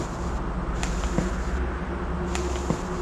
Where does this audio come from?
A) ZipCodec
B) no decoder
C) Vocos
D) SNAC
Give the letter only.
B